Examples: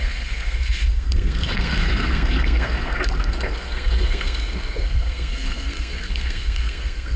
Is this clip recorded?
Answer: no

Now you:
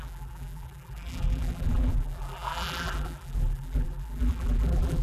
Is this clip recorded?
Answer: no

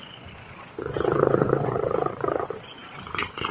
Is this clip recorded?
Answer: no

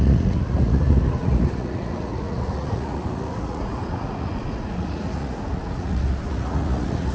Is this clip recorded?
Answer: no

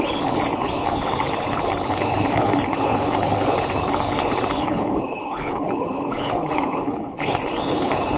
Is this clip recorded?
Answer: no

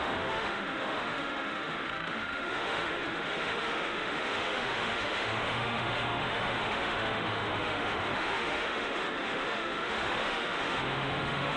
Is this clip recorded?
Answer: no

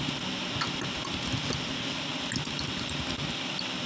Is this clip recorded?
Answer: yes